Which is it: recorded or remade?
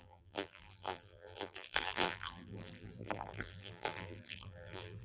remade